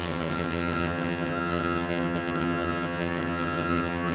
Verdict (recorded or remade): remade